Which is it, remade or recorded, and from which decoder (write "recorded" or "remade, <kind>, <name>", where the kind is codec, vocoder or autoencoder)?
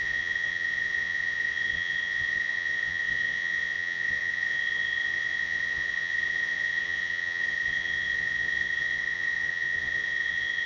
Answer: remade, vocoder, Vocos